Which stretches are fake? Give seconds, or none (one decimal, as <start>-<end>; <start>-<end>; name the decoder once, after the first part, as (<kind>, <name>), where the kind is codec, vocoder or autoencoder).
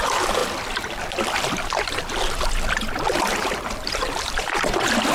0.0-0.4 (vocoder, BigVGAN v2); 3.2-5.1